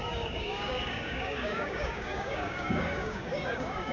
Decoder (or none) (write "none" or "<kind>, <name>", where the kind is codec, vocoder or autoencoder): codec, DAC